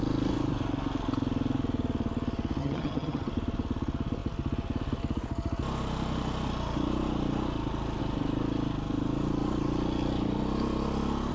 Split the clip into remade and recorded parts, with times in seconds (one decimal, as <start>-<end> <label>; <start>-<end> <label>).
0.0-2.6 recorded; 2.6-3.3 remade; 3.3-11.3 recorded